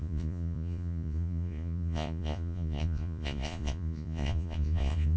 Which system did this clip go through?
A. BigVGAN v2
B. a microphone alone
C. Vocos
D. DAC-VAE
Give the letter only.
C